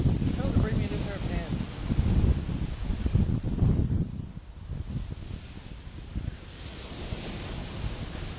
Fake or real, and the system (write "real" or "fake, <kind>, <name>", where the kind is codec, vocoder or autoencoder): real